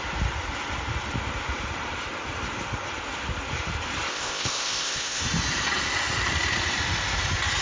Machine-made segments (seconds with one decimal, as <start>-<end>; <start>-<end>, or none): 4.1-5.2

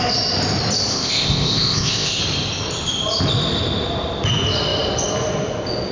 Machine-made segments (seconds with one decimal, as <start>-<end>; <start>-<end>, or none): 0.9-2.2

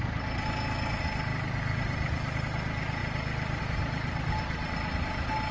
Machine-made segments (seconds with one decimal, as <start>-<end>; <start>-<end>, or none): none

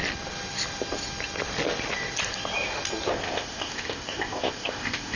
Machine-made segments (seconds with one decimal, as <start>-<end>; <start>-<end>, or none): 3.1-5.2

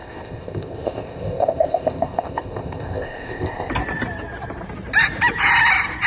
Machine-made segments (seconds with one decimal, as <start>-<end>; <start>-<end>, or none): 0.0-3.7

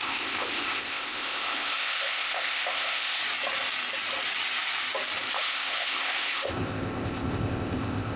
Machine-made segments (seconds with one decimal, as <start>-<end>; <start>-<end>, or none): 0.0-3.2; 5.3-8.2